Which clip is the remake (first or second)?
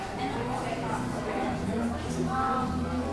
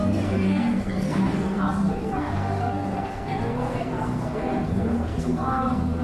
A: second